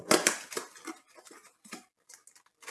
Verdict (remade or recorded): recorded